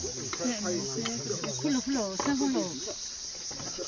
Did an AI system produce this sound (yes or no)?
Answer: no